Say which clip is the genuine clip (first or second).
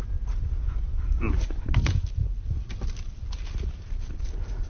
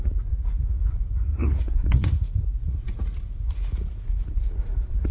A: first